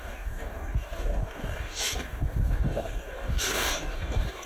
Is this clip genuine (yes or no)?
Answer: no